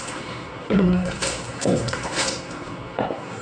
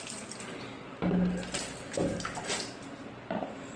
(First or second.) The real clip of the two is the second